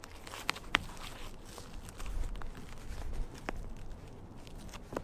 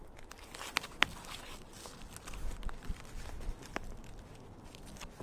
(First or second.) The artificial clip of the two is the second